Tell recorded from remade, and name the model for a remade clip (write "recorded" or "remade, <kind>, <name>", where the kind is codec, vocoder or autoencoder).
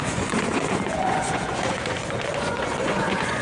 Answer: remade, vocoder, Vocos